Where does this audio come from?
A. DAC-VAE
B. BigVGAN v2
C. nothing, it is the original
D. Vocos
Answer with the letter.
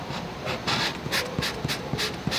B